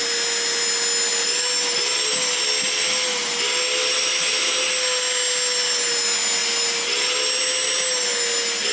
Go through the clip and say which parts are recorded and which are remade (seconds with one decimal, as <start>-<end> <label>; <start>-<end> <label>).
0.0-8.7 recorded